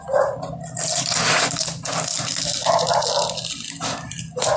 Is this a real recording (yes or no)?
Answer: yes